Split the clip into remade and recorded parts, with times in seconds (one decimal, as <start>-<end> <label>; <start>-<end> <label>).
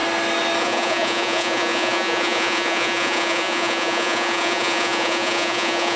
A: 0.0-0.6 recorded; 0.6-6.0 remade